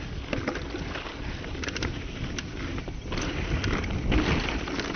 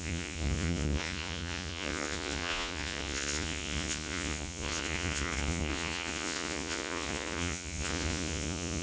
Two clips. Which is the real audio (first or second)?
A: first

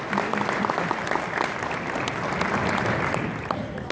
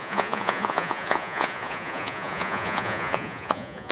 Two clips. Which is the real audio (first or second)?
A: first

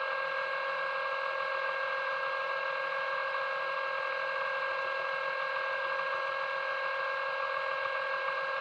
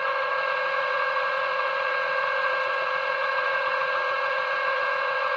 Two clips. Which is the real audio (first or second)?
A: first